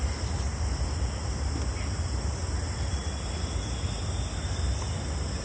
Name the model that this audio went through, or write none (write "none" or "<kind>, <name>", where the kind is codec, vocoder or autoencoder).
none